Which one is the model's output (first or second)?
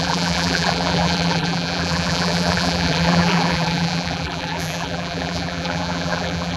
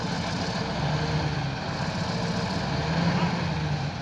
first